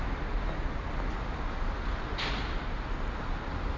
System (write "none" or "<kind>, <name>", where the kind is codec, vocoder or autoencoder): none